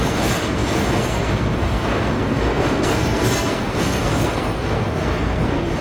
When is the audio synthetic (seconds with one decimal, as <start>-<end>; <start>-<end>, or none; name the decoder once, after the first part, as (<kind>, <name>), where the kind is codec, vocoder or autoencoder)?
0.0-5.8 (codec, SNAC)